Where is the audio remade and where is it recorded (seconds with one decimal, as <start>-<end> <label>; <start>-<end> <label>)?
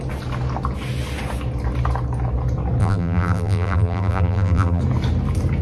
0.0-2.8 recorded; 2.8-4.8 remade; 4.8-5.6 recorded